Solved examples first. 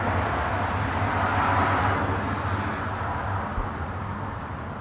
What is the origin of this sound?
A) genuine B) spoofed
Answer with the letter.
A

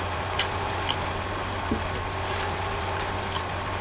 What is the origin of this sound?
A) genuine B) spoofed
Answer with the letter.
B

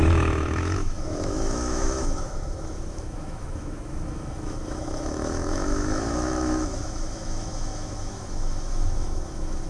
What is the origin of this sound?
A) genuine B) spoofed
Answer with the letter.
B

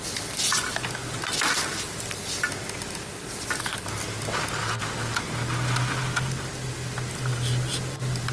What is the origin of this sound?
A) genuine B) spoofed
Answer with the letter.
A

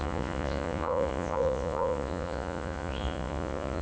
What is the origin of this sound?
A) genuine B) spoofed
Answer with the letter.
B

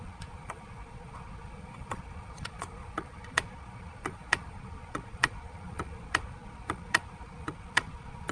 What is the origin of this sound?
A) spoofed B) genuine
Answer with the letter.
A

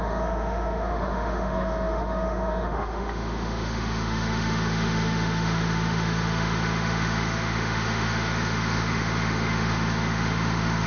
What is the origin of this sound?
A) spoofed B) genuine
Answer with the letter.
A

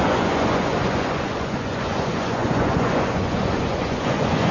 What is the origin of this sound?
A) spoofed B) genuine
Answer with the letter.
A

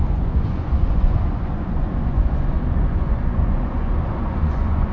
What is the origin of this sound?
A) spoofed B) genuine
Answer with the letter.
A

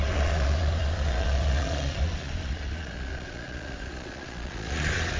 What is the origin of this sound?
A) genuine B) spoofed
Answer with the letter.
B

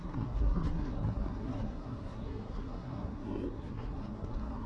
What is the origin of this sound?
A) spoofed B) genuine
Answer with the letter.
A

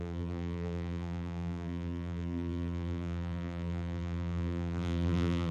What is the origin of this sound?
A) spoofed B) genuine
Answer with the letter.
A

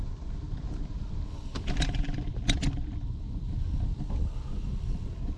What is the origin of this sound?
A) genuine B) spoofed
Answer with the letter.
A